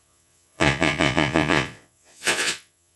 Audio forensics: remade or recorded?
remade